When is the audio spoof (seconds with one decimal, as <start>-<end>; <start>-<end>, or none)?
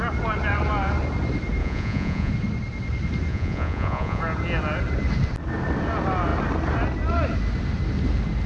1.6-2.3; 3.3-4.2